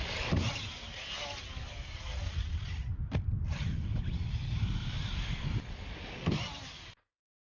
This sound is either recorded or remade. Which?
recorded